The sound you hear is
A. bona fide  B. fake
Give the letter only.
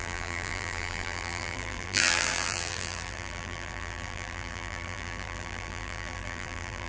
B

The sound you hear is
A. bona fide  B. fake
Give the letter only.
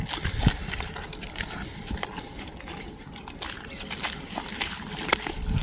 B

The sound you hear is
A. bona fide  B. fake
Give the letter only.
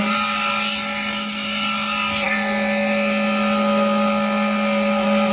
A